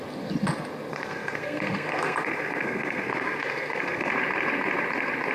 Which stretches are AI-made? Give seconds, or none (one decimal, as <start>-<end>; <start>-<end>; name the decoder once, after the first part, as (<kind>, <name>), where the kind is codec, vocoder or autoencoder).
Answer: 0.9-4.1 (codec, SNAC)

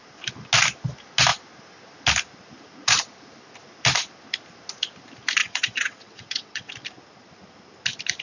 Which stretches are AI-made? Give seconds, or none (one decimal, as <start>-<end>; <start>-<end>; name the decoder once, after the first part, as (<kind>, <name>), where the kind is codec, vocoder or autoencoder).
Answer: 5.4-6.7 (vocoder, WaveNeXt)

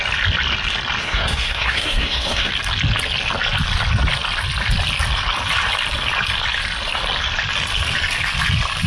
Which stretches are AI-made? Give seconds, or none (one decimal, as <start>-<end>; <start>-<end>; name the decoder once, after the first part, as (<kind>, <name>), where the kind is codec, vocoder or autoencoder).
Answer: 1.0-2.5 (codec, SNAC)